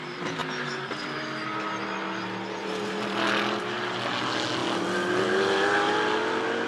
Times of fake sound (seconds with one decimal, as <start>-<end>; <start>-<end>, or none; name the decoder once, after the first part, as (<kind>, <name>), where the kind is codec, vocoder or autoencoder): none